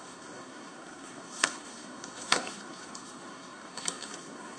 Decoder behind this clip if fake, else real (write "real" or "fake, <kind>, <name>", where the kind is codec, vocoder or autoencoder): fake, codec, SNAC